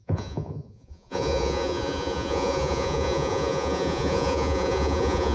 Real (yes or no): no